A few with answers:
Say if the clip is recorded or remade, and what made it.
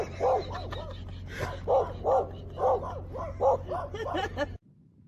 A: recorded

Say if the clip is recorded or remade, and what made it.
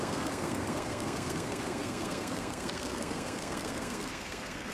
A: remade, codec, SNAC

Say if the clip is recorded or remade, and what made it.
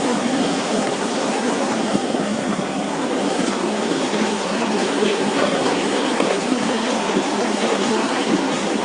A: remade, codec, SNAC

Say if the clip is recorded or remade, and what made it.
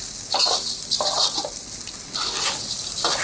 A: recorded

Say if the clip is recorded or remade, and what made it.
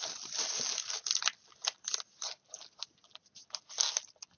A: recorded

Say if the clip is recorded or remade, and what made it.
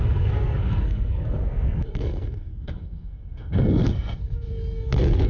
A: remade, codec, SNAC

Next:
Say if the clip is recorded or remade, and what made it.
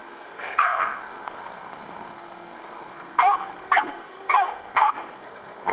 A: remade, codec, SNAC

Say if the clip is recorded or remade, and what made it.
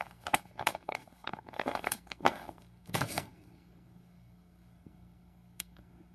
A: remade, codec, SNAC